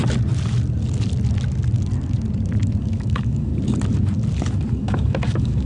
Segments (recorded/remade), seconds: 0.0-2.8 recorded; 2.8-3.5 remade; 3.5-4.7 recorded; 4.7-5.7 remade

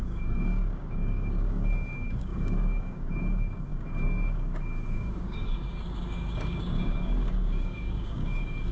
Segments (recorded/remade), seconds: 0.0-8.7 remade